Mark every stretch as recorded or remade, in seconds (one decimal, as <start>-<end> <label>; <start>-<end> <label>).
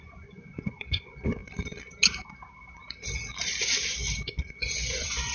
0.0-1.4 remade; 1.4-4.4 recorded; 4.4-5.3 remade